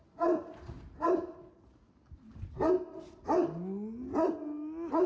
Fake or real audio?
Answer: real